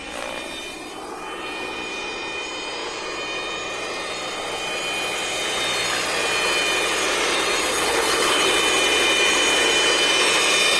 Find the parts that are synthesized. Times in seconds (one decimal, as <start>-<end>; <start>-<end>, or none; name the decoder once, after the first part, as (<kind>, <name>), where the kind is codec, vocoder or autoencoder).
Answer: 7.7-8.5 (codec, HILCodec)